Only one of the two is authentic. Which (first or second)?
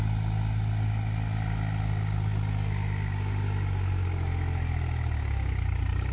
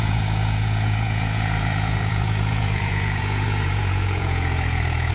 first